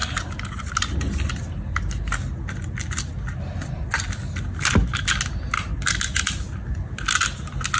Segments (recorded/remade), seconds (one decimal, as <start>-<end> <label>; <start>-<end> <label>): 0.0-7.8 recorded